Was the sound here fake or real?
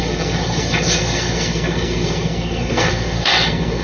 fake